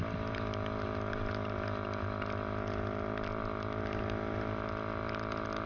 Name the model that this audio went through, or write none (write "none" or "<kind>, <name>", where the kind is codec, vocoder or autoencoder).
none